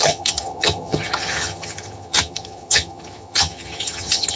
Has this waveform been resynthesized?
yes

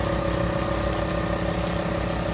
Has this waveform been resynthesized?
no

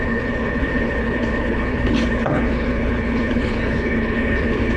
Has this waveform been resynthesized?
yes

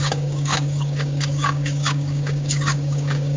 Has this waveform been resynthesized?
yes